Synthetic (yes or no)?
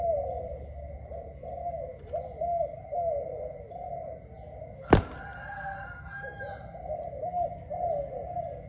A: no